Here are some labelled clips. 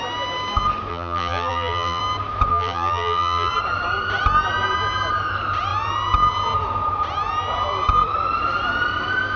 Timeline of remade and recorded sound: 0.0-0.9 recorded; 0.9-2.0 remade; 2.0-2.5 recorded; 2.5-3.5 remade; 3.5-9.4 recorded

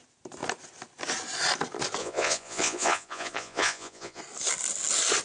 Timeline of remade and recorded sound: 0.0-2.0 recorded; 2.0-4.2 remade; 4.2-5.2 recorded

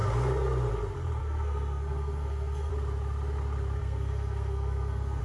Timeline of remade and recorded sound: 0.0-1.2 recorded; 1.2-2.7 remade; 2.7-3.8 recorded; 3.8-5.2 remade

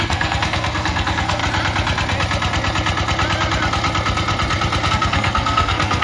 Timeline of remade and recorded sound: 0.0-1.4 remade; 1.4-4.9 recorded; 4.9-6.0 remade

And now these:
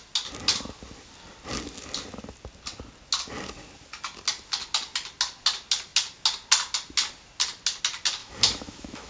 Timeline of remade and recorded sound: 0.0-8.2 recorded; 8.2-9.1 remade

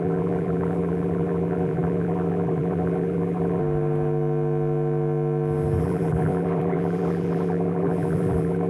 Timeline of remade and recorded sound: 0.0-3.6 remade; 3.6-5.8 recorded; 5.8-8.7 remade

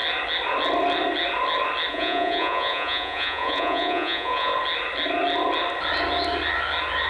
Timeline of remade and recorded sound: 0.0-1.9 recorded; 1.9-4.5 remade; 4.5-7.1 recorded